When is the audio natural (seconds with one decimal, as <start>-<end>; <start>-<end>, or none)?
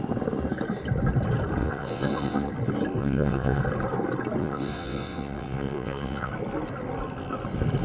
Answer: 0.0-1.6; 2.5-3.0; 3.6-4.4; 6.3-7.8